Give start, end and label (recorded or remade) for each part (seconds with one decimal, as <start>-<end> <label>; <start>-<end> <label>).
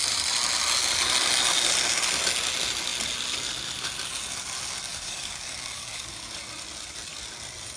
0.0-4.9 recorded; 4.9-6.1 remade; 6.1-7.8 recorded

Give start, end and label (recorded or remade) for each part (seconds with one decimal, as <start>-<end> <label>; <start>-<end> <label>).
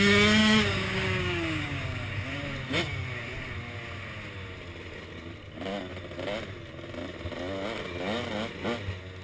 0.0-0.4 recorded; 0.4-2.4 remade; 2.4-9.2 recorded